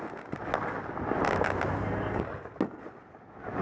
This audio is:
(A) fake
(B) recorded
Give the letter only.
B